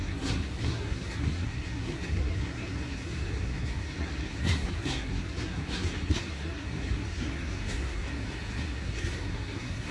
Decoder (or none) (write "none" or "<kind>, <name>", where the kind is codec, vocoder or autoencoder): codec, SNAC